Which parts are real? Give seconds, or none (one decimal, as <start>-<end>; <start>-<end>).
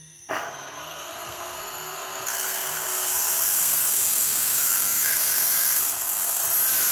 6.4-6.9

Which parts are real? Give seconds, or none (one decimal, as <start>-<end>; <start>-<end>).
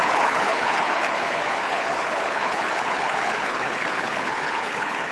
none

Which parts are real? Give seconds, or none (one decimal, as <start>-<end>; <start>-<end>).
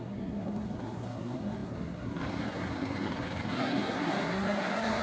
none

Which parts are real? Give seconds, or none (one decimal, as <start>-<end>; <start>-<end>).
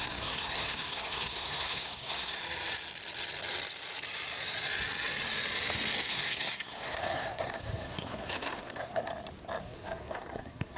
2.4-6.1; 9.1-9.6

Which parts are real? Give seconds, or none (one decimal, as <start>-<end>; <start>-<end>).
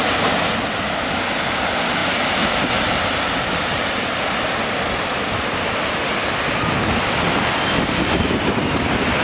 0.0-9.2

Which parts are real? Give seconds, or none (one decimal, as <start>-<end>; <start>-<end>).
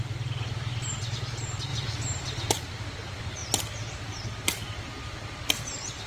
0.0-6.1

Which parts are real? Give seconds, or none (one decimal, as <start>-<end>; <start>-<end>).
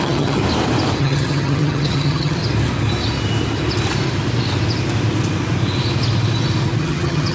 0.4-1.0; 2.4-6.8